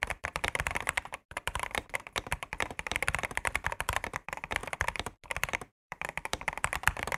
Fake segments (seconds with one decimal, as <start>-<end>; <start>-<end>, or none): 0.0-7.2

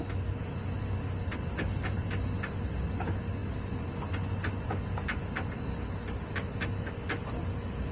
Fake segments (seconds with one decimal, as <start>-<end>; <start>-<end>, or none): none

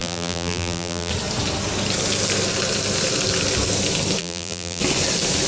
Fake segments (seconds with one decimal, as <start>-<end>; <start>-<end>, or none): 0.0-1.1; 4.2-4.8

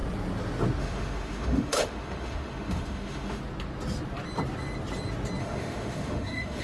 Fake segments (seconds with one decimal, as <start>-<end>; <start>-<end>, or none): 0.8-3.4; 5.4-6.6

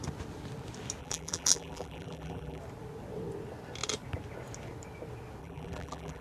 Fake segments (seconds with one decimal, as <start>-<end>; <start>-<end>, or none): 1.0-2.6; 5.4-6.2

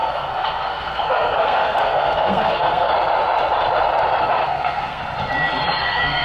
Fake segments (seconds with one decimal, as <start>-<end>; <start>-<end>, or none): 0.0-2.9; 4.2-5.0; 5.8-6.2

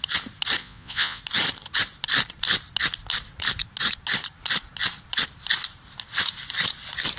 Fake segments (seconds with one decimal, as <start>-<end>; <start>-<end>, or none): 0.6-1.2

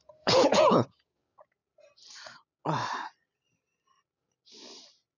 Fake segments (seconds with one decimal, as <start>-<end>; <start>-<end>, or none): 0.0-1.2